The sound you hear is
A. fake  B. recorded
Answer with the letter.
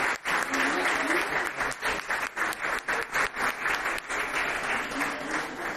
B